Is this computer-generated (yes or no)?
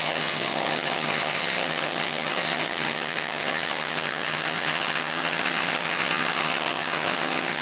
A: yes